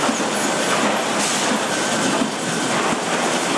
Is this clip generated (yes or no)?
no